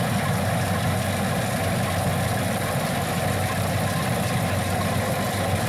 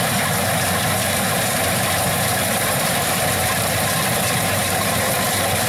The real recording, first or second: first